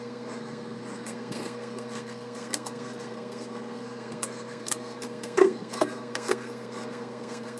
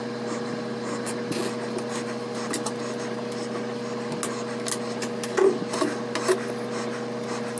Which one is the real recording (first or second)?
second